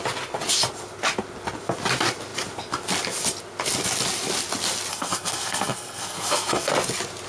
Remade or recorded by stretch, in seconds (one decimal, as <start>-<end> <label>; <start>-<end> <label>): 0.0-4.9 recorded; 4.9-6.7 remade; 6.7-7.3 recorded